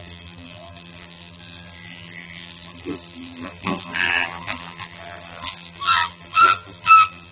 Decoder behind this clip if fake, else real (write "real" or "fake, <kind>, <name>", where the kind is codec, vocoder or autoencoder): fake, vocoder, BigVGAN v2